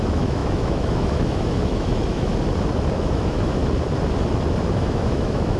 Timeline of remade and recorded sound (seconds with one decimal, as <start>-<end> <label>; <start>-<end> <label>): 0.0-2.3 remade; 2.3-3.0 recorded; 3.0-3.6 remade; 3.6-4.8 recorded; 4.8-5.6 remade